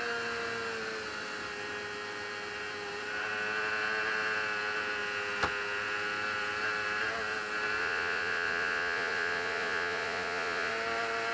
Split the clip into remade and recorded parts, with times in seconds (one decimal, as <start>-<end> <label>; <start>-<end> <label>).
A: 0.0-7.8 recorded; 7.8-10.7 remade; 10.7-11.3 recorded